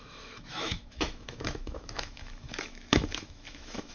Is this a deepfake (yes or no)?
yes